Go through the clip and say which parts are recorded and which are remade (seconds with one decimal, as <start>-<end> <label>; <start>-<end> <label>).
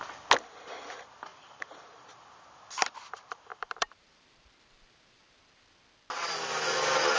0.0-1.3 recorded; 1.3-2.2 remade; 2.2-3.5 recorded; 3.5-5.3 remade; 5.3-7.2 recorded